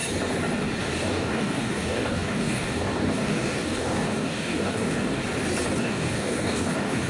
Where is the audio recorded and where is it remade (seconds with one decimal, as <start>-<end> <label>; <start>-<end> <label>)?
0.0-0.8 recorded; 0.8-5.2 remade; 5.2-5.8 recorded; 5.8-7.1 remade